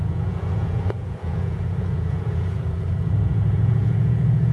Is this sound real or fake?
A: fake